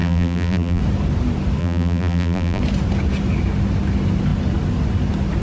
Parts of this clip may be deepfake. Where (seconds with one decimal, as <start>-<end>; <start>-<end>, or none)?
0.0-0.8; 1.6-2.6